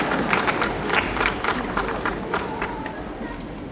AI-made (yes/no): no